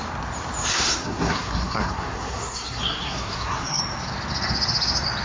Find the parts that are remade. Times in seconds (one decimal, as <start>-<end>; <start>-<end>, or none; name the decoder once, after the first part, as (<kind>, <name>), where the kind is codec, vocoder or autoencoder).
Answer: 0.7-3.8 (codec, SNAC)